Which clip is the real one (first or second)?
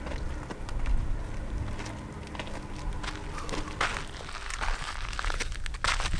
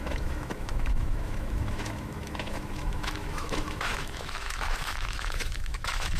first